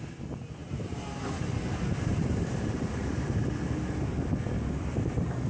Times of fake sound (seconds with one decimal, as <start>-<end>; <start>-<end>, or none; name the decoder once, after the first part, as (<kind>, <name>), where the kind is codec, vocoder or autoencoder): 0.6-1.2 (vocoder, BigVGAN v2); 2.1-3.4